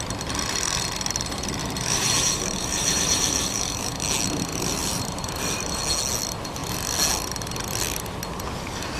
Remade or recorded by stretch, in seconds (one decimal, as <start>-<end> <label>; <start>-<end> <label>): 0.0-1.6 recorded; 1.6-3.9 remade; 3.9-4.5 recorded; 4.5-5.8 remade; 5.8-9.0 recorded